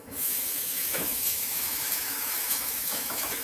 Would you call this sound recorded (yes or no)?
no